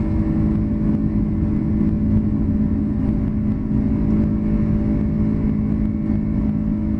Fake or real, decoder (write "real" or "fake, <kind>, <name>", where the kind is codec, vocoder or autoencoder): real